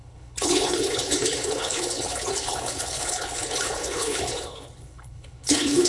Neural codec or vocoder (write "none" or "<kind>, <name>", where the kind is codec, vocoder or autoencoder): codec, HILCodec